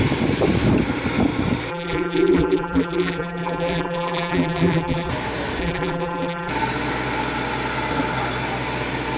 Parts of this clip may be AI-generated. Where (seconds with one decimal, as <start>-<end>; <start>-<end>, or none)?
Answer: 1.7-5.1; 5.6-6.5